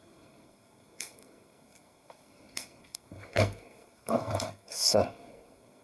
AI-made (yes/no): yes